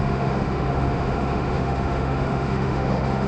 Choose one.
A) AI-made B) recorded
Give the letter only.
A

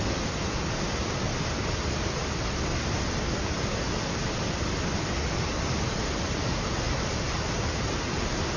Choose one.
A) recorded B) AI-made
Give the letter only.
A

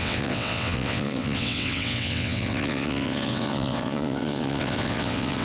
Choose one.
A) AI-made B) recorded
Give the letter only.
A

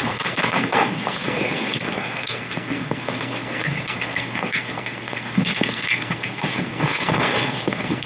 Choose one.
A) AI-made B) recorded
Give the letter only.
A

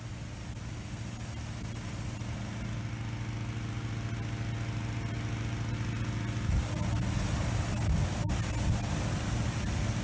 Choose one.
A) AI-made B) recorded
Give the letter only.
B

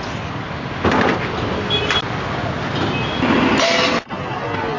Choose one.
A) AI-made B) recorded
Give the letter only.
B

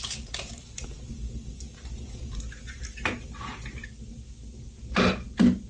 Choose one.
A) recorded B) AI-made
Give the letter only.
A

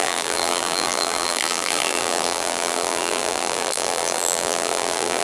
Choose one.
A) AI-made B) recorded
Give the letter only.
A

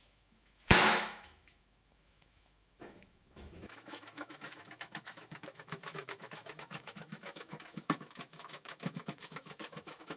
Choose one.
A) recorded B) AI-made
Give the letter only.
B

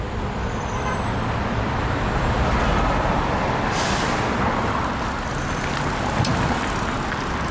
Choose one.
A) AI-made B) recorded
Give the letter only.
B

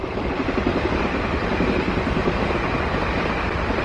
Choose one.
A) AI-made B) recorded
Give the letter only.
B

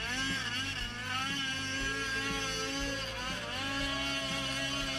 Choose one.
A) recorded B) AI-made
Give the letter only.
A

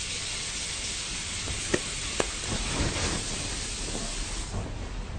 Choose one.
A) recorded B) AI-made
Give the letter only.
A